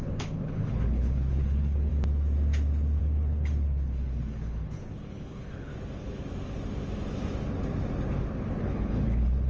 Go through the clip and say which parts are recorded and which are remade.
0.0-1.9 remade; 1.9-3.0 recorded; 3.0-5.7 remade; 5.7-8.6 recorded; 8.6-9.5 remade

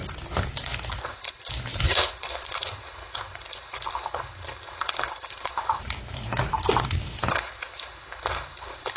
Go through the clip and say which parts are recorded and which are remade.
0.0-1.0 recorded; 1.0-1.5 remade; 1.5-1.9 recorded; 1.9-5.8 remade; 5.8-7.3 recorded; 7.3-9.0 remade